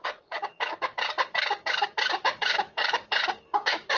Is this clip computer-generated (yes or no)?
yes